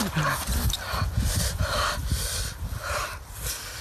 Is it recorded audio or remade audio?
recorded